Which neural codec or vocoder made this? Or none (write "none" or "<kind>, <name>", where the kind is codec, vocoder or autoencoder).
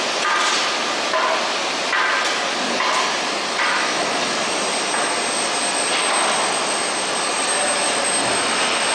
none